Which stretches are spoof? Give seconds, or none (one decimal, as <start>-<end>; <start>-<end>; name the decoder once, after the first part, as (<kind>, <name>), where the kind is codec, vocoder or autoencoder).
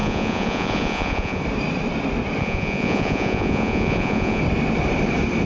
0.0-1.4 (vocoder, Vocos); 2.4-4.4